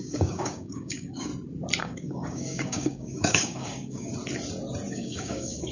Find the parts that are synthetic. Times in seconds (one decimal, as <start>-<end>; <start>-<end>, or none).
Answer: 0.0-1.3; 1.8-4.1; 4.9-5.7